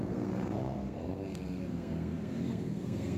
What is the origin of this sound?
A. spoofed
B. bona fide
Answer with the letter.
A